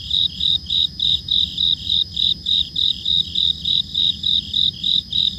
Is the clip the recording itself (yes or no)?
no